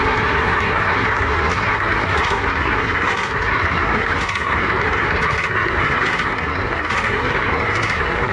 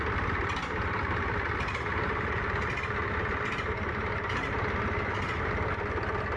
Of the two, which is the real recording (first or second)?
second